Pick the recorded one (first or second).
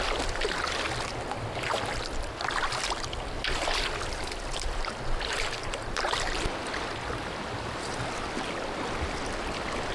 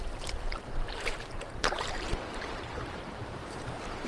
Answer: first